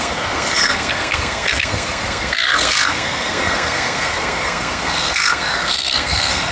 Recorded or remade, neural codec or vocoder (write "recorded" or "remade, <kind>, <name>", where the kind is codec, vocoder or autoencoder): remade, codec, SNAC